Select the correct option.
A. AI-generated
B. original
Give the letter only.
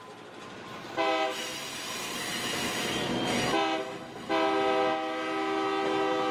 B